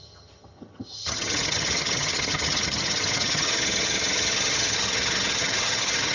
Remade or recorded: remade